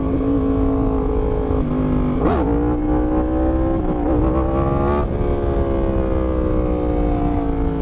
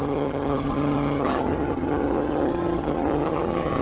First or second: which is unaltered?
first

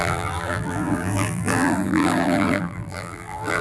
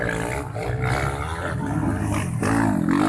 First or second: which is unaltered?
second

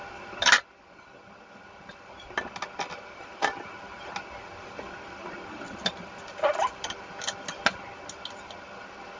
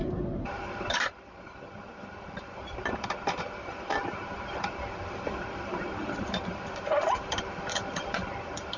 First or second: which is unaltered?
first